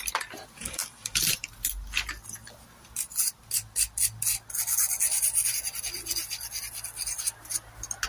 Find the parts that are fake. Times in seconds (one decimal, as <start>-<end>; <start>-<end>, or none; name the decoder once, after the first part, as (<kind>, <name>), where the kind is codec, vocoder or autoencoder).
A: none